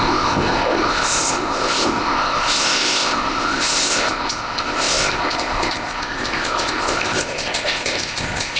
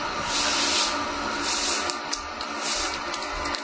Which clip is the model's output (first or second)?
first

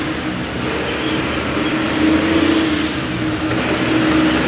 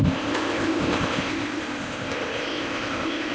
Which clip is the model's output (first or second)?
second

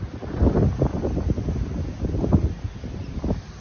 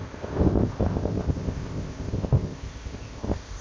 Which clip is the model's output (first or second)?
second